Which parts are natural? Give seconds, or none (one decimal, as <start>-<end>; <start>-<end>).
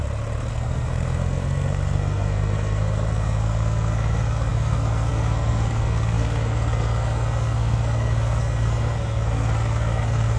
0.0-0.5